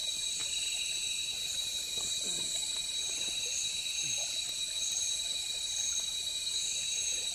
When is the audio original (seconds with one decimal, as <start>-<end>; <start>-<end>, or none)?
0.0-7.3